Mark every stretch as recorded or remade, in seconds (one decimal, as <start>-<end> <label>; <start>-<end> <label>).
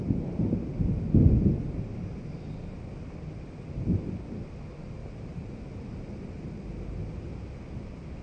0.0-5.0 recorded; 5.0-5.6 remade; 5.6-8.2 recorded